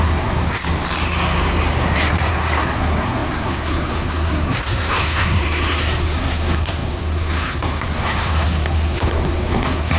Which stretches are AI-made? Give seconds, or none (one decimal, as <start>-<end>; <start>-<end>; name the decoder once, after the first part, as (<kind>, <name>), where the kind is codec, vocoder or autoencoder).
0.0-0.6 (codec, SNAC); 1.8-10.0